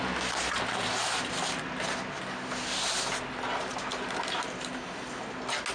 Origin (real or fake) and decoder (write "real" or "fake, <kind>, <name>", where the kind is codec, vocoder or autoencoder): real